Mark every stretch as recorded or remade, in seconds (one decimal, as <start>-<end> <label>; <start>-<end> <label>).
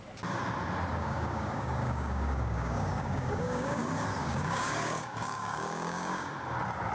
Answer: 0.0-0.9 recorded; 0.9-3.8 remade; 3.8-4.2 recorded; 4.2-6.3 remade; 6.3-6.9 recorded